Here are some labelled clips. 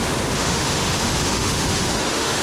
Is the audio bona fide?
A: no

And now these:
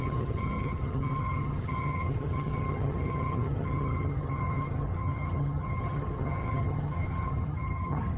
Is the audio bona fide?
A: no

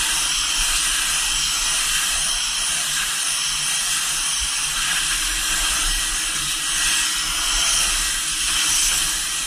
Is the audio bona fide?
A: yes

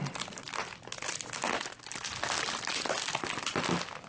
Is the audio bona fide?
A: yes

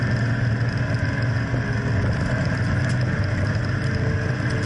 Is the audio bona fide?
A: yes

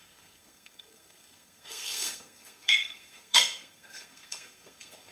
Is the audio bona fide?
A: no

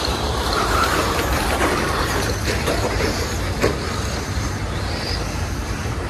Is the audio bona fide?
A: no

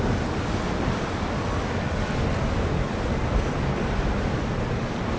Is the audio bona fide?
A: yes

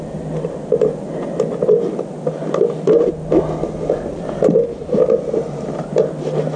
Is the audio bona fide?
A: yes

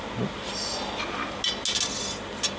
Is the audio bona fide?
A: yes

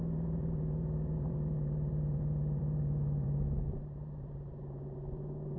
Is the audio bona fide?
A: no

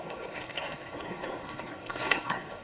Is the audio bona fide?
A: no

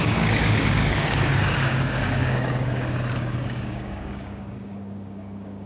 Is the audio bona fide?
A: no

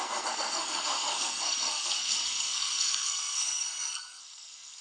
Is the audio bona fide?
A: no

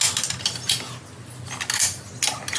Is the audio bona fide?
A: yes